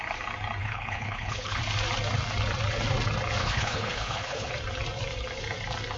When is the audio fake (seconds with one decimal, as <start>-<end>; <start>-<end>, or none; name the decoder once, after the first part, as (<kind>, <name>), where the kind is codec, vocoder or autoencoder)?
0.6-1.6 (codec, HILCodec); 3.4-4.5